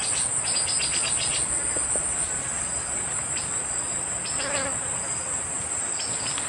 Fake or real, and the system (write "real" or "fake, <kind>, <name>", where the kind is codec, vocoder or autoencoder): real